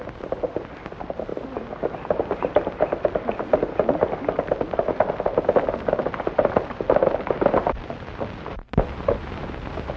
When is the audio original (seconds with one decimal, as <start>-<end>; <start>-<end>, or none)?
0.0-10.0